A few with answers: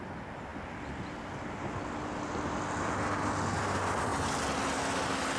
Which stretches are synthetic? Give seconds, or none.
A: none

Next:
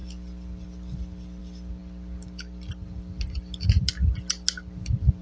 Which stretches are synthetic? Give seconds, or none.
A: none

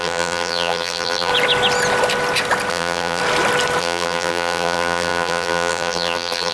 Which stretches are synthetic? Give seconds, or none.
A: 0.0-1.3 (vocoder, BigVGAN v2); 2.7-3.2; 3.8-6.5

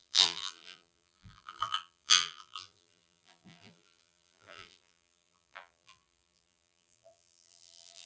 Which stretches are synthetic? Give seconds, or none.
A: 0.0-8.1 (vocoder, BigVGAN v2)